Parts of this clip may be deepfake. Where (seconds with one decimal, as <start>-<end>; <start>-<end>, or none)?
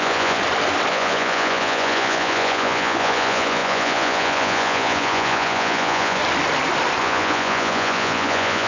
0.0-0.4; 0.9-6.2; 7.0-8.7